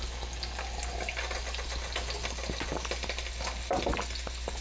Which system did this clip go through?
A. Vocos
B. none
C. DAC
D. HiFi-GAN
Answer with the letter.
B